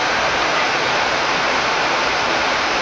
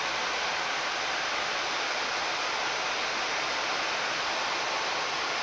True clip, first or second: second